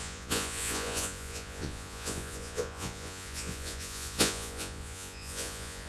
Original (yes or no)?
no